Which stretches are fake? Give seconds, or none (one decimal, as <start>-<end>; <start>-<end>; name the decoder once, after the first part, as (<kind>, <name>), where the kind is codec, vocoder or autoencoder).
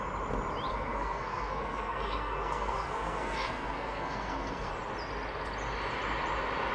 0.7-4.7 (codec, SNAC)